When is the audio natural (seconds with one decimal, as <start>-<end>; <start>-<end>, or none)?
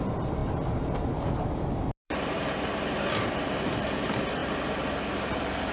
4.4-5.0